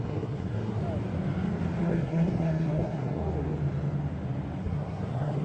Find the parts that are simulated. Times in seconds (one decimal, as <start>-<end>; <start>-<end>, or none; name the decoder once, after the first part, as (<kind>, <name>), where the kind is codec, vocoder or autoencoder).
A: 0.0-0.8 (codec, SNAC); 1.8-3.2; 4.6-5.4